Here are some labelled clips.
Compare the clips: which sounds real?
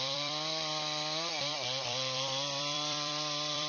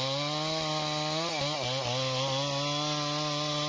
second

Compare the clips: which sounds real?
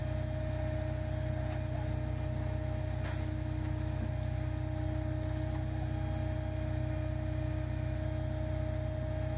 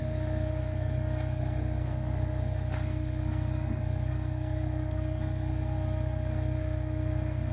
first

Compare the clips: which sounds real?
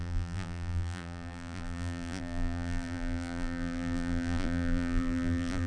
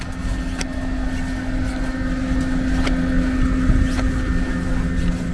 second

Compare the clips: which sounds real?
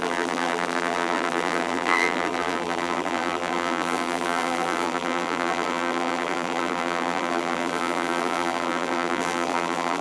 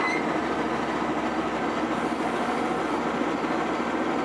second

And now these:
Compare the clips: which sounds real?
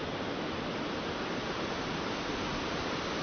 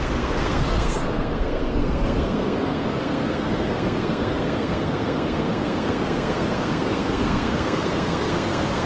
first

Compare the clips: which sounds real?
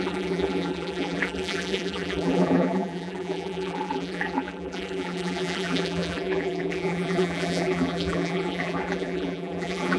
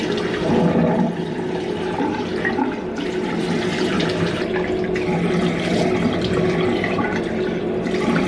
second